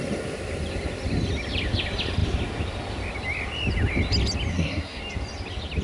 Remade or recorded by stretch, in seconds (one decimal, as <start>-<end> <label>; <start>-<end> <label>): 0.0-4.5 recorded; 4.5-5.0 remade; 5.0-5.8 recorded